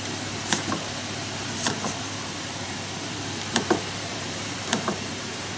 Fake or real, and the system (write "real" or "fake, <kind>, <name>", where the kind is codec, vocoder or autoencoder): fake, vocoder, BigVGAN v2